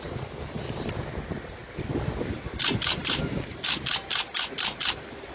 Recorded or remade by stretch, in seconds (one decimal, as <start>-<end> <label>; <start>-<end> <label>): 0.0-1.6 remade; 1.6-2.4 recorded; 2.4-5.3 remade